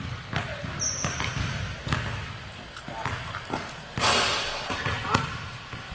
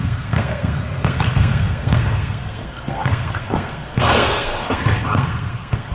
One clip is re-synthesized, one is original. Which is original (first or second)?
first